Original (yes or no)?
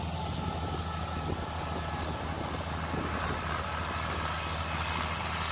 yes